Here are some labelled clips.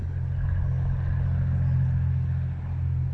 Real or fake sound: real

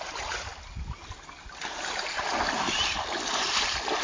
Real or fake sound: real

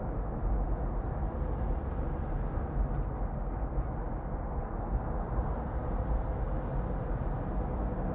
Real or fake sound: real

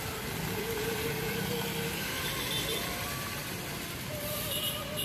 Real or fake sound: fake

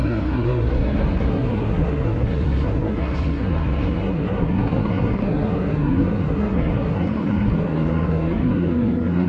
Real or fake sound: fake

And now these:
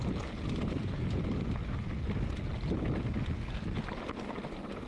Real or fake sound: real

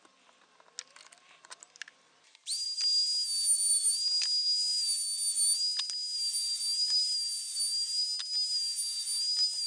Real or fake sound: real